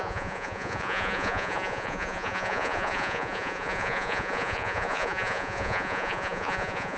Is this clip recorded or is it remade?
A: remade